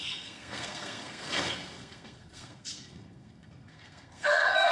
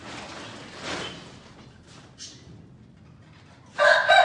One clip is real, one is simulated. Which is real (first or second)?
second